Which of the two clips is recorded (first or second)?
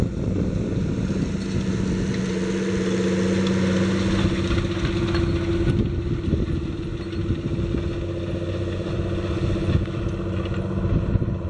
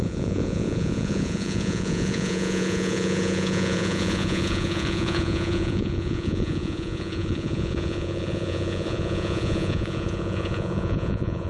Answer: first